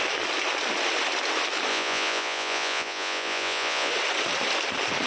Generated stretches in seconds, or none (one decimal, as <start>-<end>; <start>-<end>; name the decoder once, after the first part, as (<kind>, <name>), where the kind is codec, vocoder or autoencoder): 1.7-3.9 (vocoder, Vocos)